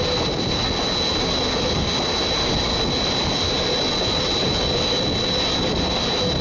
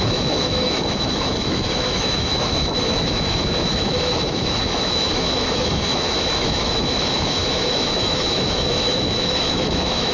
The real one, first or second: first